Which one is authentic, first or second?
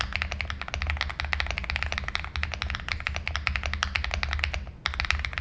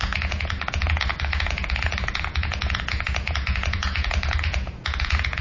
first